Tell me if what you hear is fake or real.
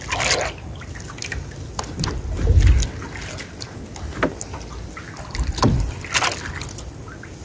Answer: real